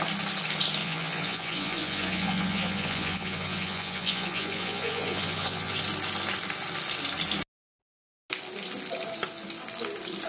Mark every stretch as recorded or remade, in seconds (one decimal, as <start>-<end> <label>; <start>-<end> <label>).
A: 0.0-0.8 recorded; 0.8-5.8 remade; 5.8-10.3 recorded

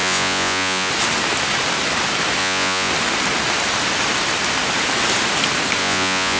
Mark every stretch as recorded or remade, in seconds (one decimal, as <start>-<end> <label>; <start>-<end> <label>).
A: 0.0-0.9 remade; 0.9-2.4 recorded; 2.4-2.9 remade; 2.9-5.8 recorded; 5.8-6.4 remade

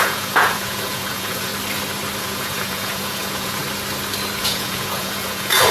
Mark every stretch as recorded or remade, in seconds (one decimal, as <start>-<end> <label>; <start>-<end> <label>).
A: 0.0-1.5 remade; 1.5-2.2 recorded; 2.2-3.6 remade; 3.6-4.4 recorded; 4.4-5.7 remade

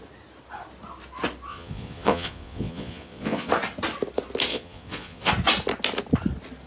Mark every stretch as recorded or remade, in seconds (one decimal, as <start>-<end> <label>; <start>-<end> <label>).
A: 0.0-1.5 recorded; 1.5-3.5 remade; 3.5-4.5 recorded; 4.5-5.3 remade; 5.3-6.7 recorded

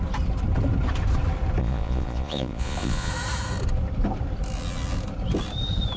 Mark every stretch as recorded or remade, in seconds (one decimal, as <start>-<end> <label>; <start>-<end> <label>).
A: 0.0-1.6 recorded; 1.6-3.1 remade; 3.1-6.0 recorded